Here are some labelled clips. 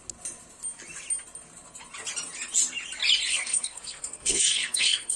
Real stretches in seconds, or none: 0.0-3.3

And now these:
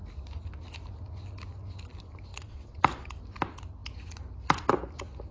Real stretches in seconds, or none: 0.0-2.3; 3.2-5.3

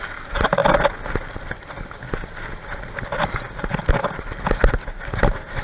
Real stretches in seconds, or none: 0.0-5.6

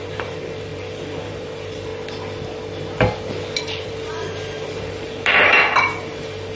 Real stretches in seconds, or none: 1.9-3.6

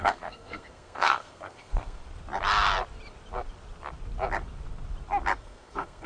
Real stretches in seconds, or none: 2.0-5.4

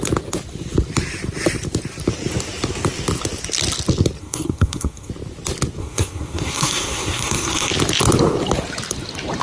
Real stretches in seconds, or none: 0.0-4.2; 5.1-5.8; 7.7-9.4

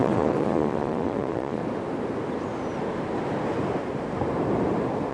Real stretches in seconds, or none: 1.6-5.1